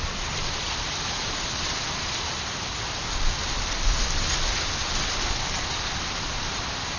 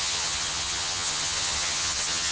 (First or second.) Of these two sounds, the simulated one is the second